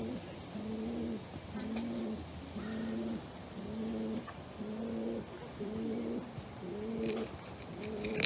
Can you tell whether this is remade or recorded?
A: recorded